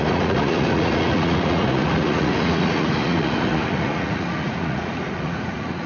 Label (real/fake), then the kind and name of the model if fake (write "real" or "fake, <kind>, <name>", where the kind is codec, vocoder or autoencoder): fake, vocoder, Vocos